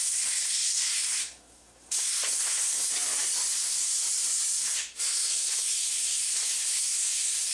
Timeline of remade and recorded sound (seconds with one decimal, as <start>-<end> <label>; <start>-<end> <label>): 0.0-2.9 remade; 2.9-3.5 recorded; 3.5-3.9 remade; 3.9-4.6 recorded; 4.6-7.5 remade